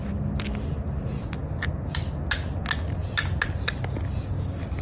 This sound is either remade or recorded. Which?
recorded